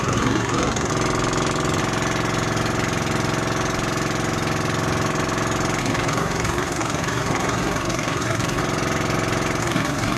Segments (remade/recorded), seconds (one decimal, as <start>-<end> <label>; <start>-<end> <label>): 0.0-0.9 remade; 0.9-5.8 recorded; 5.8-8.6 remade; 8.6-9.6 recorded; 9.6-10.2 remade